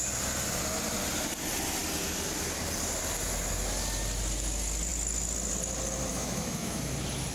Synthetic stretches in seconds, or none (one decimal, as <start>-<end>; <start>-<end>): 6.1-6.8

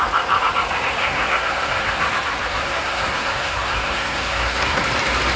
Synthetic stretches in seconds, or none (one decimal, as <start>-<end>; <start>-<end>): 1.0-2.0; 2.5-4.8

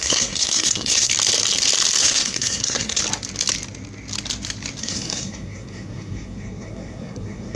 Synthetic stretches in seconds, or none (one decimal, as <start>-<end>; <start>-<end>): 0.0-1.1; 2.0-3.0; 4.8-7.6

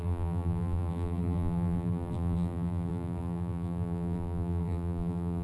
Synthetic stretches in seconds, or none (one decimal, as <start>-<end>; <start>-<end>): 0.0-5.4

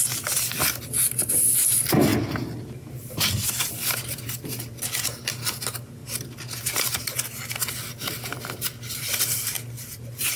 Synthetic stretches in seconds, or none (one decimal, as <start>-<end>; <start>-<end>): none

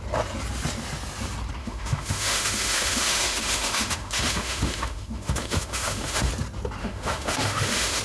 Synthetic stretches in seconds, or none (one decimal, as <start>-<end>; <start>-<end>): 1.6-6.3; 6.8-8.0

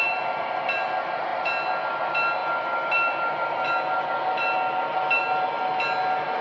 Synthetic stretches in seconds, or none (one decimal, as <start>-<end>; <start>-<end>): none